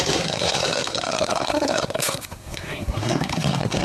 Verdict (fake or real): fake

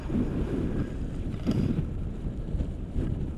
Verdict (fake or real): real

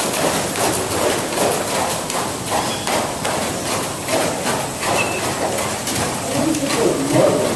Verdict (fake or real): fake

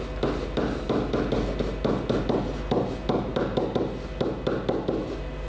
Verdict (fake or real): real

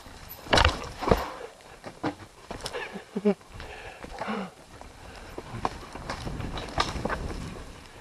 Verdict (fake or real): fake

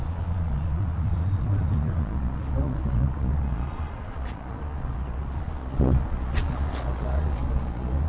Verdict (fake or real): fake